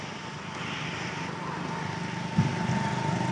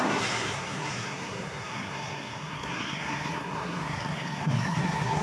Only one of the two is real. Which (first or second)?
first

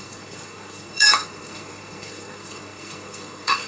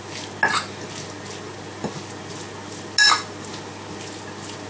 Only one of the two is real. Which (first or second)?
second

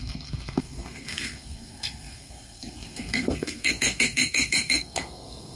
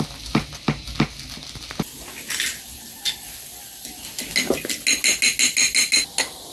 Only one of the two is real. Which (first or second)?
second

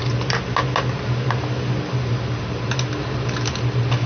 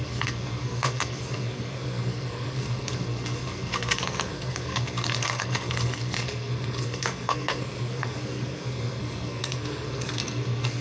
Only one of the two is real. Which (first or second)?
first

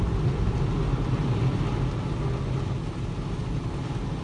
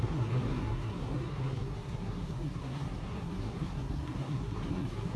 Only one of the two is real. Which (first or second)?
first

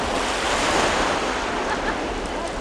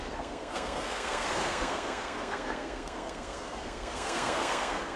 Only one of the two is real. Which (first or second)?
first